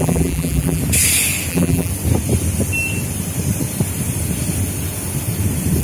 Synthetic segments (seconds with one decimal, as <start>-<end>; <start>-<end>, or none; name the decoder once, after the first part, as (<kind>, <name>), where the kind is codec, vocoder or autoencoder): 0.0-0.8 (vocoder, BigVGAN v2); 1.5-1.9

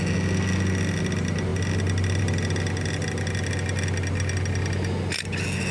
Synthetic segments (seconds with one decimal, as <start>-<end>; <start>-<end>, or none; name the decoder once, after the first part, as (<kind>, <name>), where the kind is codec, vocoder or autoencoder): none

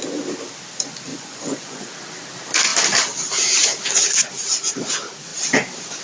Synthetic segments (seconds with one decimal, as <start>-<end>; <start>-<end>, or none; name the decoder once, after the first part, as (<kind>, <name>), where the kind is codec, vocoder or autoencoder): 1.1-1.9 (vocoder, Vocos)